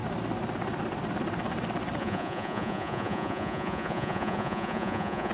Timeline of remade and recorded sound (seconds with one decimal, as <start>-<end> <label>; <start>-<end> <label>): 0.0-2.0 recorded; 2.0-5.3 remade